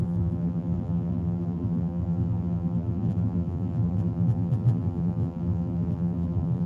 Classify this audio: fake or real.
fake